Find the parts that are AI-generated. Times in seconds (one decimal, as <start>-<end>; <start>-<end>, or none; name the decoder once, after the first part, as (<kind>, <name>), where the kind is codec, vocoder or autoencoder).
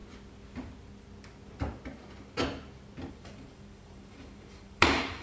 3.1-5.2 (vocoder, BigVGAN v2)